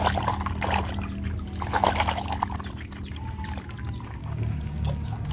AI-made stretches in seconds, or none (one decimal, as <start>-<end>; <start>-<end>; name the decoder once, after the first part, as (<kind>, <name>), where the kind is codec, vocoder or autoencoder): 4.2-5.3 (codec, DAC)